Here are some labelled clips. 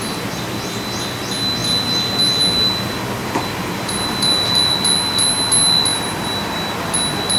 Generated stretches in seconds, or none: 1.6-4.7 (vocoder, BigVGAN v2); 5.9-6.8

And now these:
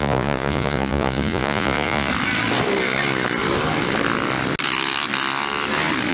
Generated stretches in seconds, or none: 0.0-2.1 (vocoder, Vocos)

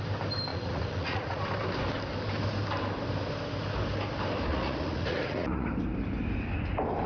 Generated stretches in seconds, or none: 0.5-1.4 (vocoder, Vocos); 4.5-5.7

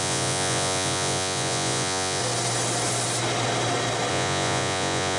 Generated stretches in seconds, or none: 0.0-2.2 (vocoder, Vocos); 4.1-5.2

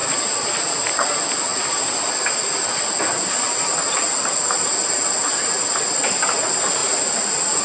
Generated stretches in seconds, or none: 0.0-0.6 (vocoder, BigVGAN v2); 1.5-2.8

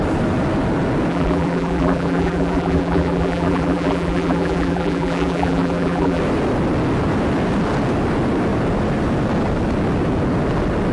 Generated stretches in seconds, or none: 1.1-6.2 (vocoder, BigVGAN v2)